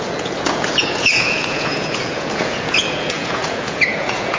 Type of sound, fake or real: fake